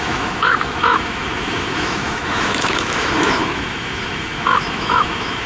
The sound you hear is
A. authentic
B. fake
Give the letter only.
B